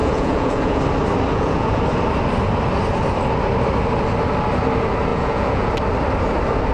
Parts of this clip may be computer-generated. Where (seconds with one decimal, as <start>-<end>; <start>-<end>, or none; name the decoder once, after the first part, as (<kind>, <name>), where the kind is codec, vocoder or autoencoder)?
0.0-0.8 (vocoder, Vocos); 1.3-1.8; 5.1-5.7